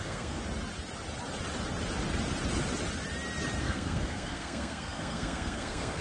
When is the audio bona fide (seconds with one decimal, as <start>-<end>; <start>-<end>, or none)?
0.4-3.6